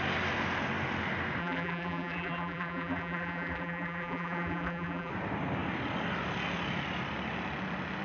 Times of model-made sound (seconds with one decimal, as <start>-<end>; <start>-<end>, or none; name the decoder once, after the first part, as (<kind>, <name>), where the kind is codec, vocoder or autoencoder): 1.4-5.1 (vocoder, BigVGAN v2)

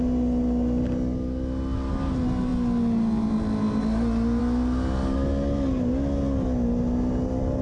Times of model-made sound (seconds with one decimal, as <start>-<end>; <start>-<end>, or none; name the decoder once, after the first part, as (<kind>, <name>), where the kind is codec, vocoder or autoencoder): none

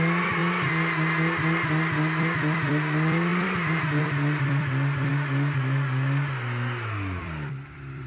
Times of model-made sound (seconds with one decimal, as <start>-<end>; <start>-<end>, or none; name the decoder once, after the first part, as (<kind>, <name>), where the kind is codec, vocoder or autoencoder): 0.0-0.4 (vocoder, BigVGAN v2); 2.2-5.1; 7.2-8.1

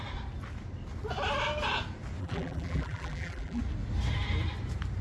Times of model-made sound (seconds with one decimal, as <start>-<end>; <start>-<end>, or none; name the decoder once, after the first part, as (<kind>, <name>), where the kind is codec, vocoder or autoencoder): 2.2-3.6 (vocoder, BigVGAN v2)

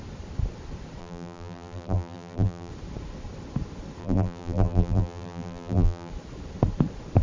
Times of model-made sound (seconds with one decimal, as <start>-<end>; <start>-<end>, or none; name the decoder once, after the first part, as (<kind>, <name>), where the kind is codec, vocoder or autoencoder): 1.0-2.7 (vocoder, BigVGAN v2); 4.0-6.1

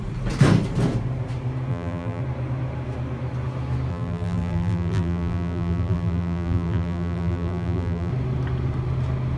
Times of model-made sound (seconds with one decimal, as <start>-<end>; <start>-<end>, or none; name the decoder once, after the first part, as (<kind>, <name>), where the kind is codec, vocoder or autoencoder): 1.7-2.2 (vocoder, BigVGAN v2); 3.9-8.1